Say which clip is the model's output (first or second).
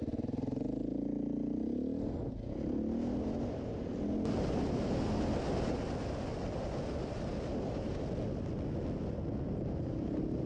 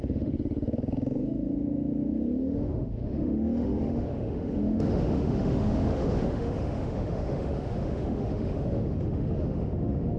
second